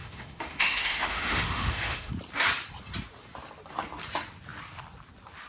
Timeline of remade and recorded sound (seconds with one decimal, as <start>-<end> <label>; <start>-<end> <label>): 0.0-2.1 remade; 2.1-5.5 recorded